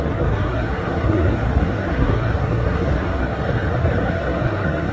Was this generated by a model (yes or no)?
yes